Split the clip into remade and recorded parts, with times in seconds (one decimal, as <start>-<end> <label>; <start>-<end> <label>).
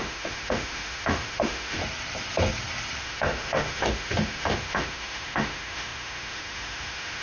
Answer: 0.0-1.8 remade; 1.8-3.0 recorded; 3.0-7.2 remade